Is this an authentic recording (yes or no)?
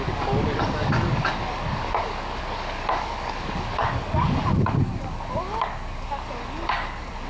no